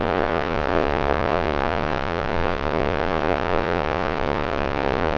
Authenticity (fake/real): fake